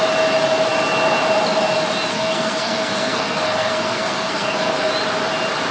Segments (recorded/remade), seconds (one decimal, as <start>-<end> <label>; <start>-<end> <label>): 0.0-2.1 recorded; 2.1-4.9 remade; 4.9-5.7 recorded